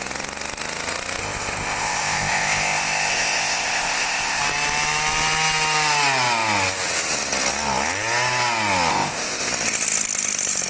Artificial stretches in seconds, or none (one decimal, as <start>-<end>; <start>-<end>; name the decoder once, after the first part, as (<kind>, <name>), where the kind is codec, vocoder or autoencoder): 1.2-4.4 (codec, ZipCodec); 8.9-9.5